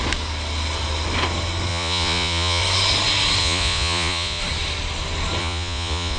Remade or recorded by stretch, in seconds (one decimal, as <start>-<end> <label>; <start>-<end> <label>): 0.0-1.7 recorded; 1.7-2.6 remade; 2.6-3.4 recorded; 3.4-4.4 remade; 4.4-5.4 recorded; 5.4-6.2 remade